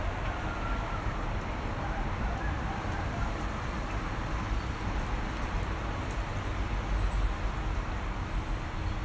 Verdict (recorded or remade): remade